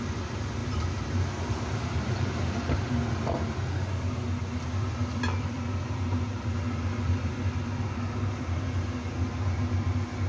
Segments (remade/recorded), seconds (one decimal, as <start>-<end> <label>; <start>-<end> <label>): 0.0-0.6 recorded; 0.6-3.0 remade; 3.0-10.3 recorded